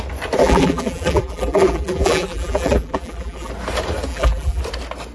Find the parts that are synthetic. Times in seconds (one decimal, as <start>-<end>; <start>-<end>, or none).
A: 0.4-3.5; 4.1-4.6